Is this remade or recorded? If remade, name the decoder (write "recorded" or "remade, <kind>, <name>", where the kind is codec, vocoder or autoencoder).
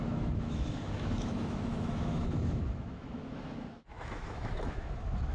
remade, autoencoder, DAC-VAE